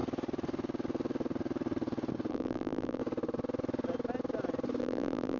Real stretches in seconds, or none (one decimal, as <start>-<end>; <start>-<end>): 0.0-2.3; 3.0-4.8